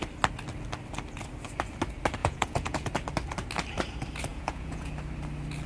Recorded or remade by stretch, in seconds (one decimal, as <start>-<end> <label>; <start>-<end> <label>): 0.0-2.2 recorded; 2.2-2.9 remade; 2.9-4.3 recorded; 4.3-4.9 remade; 4.9-5.7 recorded